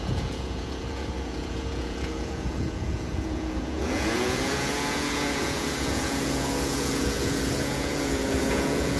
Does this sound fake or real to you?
fake